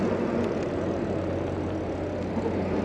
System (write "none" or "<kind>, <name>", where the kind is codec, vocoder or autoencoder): none